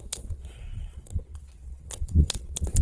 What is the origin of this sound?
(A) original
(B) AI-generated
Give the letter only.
B